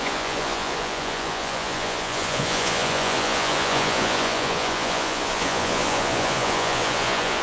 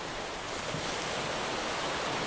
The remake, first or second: first